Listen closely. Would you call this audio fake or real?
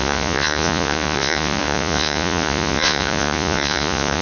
fake